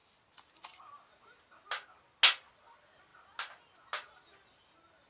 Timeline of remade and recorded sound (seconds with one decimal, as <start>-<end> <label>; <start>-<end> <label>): 0.0-5.1 recorded